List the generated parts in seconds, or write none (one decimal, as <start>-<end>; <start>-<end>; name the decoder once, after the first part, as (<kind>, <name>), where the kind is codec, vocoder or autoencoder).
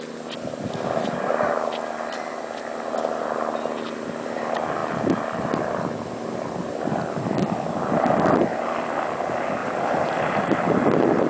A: 9.6-10.7 (vocoder, BigVGAN v2)